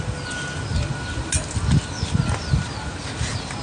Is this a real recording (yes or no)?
yes